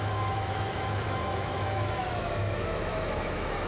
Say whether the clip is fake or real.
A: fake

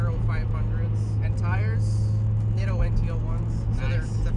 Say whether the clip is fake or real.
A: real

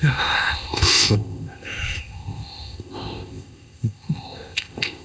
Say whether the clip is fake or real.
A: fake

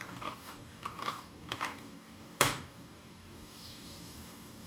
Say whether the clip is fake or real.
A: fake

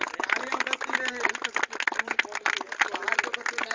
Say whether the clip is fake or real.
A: real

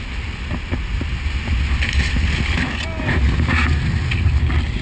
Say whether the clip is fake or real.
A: real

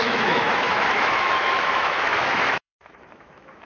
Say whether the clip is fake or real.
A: fake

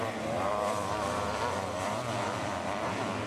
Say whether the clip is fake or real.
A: real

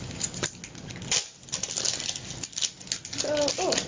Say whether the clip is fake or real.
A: real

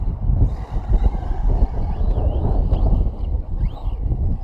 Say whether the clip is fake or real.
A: real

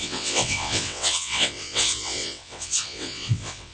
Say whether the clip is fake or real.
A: fake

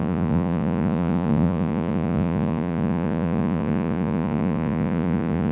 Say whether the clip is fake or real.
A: fake